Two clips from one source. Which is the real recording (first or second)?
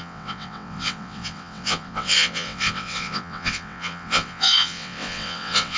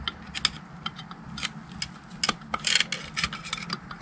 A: second